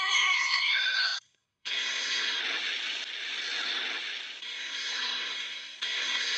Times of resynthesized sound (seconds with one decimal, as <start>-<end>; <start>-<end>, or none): 0.0-2.4; 4.4-6.4